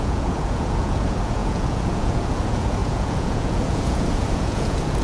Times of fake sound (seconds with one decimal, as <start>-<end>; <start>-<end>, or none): 0.0-5.0